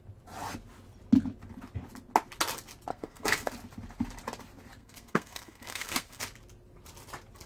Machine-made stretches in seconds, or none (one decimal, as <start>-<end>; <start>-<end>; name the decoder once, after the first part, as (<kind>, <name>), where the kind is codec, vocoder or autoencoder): 2.9-3.5 (codec, SNAC); 4.8-6.2